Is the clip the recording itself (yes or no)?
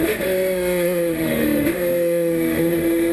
no